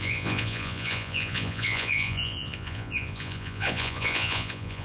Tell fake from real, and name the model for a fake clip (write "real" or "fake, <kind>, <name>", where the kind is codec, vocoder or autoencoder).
fake, vocoder, Vocos